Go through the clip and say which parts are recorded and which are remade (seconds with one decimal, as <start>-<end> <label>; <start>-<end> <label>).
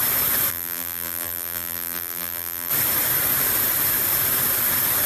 0.0-0.5 recorded; 0.5-2.7 remade; 2.7-5.1 recorded